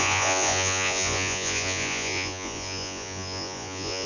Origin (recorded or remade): remade